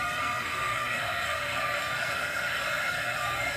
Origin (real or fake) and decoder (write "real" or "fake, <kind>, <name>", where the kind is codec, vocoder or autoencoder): fake, codec, SNAC